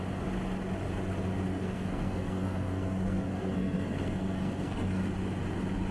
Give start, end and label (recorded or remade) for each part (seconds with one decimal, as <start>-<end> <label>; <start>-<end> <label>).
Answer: 0.0-1.5 recorded; 1.5-5.0 remade; 5.0-5.9 recorded